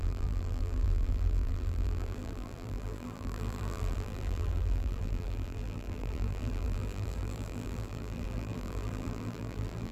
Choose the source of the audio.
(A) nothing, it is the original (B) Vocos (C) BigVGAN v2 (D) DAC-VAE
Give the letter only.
C